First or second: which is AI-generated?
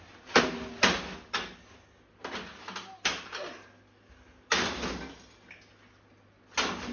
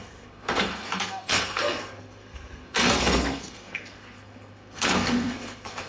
second